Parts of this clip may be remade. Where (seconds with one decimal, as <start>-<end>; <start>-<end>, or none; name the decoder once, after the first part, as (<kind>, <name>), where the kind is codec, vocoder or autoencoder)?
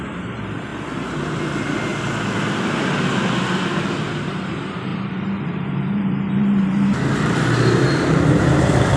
0.0-0.7 (vocoder, BigVGAN v2); 1.2-1.9; 4.2-9.0